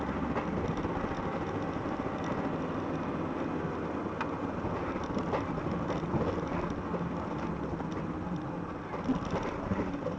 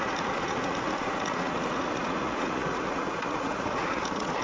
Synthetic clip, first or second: second